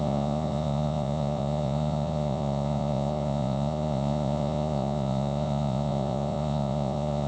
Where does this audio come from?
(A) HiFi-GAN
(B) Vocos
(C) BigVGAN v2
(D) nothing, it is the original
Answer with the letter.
B